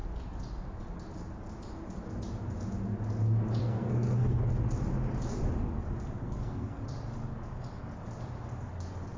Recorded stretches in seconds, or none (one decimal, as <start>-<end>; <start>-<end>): 0.0-3.6; 4.4-6.2; 6.8-9.2